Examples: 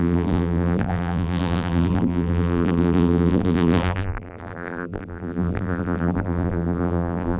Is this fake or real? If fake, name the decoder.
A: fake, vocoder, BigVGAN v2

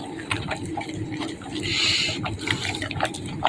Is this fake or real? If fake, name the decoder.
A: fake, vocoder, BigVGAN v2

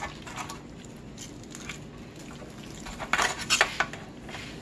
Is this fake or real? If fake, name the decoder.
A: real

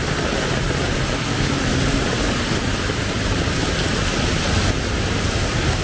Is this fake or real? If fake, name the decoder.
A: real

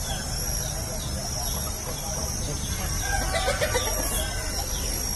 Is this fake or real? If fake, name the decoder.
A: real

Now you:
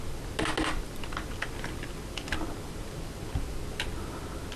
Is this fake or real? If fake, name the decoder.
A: real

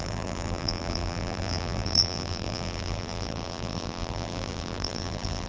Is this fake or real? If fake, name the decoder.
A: fake, vocoder, BigVGAN v2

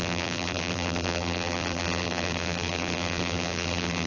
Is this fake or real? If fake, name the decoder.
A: fake, vocoder, BigVGAN v2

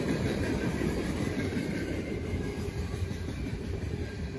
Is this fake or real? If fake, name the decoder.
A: fake, vocoder, BigVGAN v2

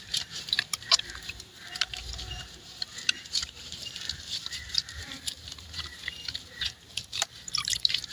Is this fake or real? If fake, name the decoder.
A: fake, vocoder, BigVGAN v2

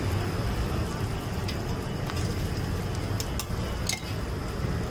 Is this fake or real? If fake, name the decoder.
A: real